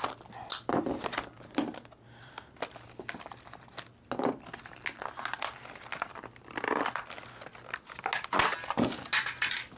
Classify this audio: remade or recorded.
recorded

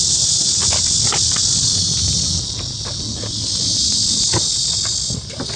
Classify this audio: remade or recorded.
recorded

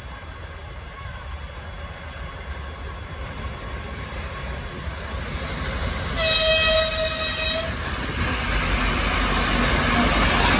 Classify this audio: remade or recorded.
recorded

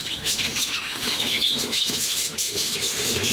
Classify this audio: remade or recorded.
remade